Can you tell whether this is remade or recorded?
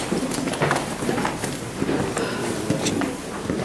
recorded